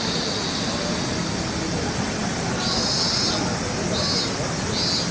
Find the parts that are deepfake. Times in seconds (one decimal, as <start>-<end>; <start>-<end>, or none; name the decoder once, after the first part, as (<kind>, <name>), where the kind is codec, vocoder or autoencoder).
none